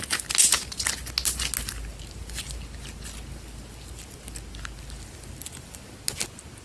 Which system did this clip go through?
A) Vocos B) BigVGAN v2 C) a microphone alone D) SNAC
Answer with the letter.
C